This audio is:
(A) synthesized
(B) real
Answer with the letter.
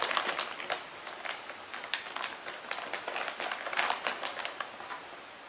B